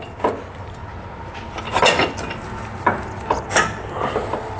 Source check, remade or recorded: recorded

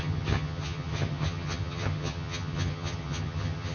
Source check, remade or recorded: remade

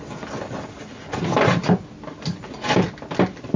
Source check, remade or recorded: recorded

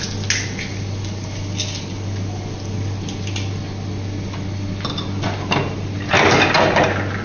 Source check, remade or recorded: recorded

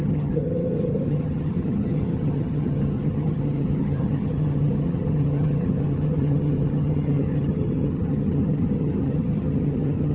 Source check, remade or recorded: remade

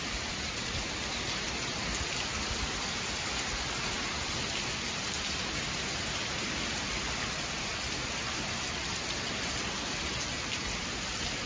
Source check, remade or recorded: recorded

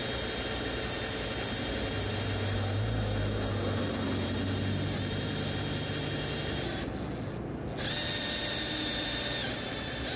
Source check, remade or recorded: recorded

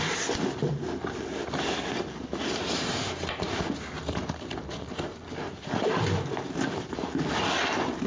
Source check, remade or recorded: recorded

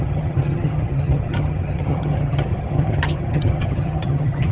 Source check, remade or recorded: remade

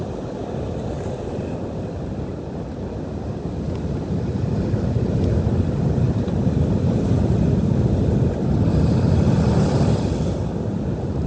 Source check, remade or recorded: recorded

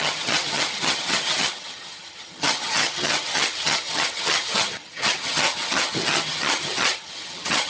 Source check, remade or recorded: remade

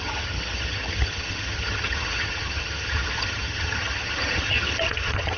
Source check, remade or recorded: remade